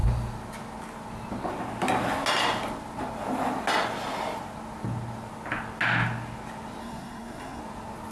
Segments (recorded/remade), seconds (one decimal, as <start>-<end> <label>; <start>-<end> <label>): 0.0-6.8 recorded; 6.8-7.6 remade; 7.6-8.1 recorded